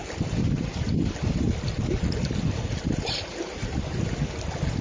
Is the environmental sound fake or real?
real